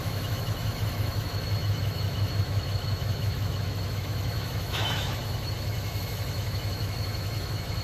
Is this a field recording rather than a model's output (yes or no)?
no